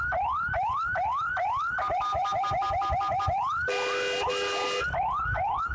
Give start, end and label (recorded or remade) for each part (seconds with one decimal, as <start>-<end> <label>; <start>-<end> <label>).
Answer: 0.0-5.7 recorded